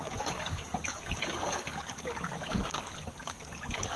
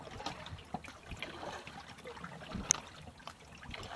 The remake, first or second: first